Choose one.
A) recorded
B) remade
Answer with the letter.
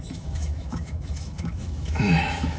B